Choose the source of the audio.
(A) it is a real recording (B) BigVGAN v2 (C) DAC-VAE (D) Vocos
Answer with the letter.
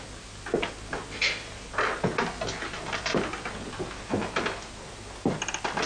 A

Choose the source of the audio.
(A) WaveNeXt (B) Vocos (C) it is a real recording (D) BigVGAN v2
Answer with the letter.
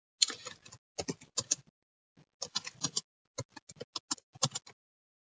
C